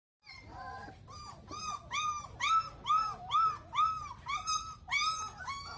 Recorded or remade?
recorded